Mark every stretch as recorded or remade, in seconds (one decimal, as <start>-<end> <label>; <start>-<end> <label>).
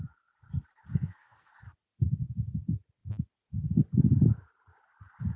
0.0-0.9 recorded; 0.9-1.5 remade; 1.5-5.4 recorded